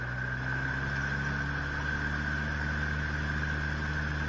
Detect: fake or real real